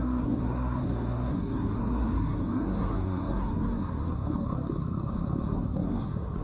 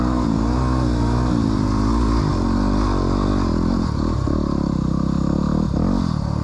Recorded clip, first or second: second